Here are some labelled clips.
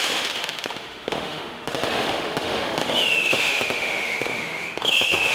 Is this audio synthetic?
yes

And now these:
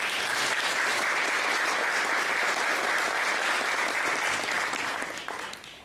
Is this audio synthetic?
no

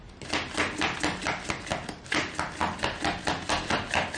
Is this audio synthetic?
no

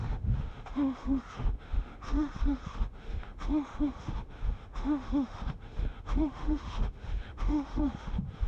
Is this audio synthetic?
yes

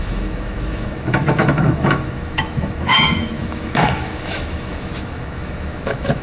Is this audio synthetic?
yes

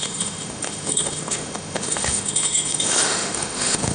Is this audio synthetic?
yes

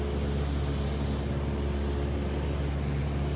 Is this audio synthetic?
no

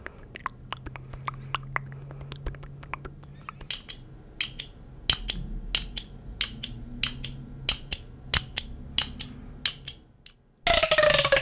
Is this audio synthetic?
no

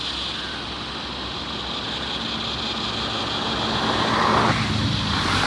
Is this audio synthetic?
no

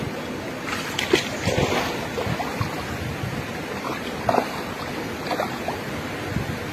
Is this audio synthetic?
no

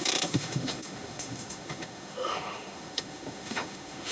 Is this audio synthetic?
yes